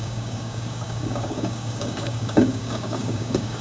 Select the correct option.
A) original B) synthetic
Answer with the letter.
B